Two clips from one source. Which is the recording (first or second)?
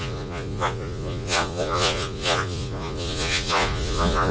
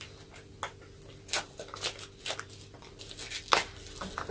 second